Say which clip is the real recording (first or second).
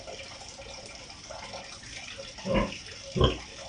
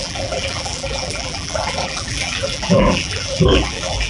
first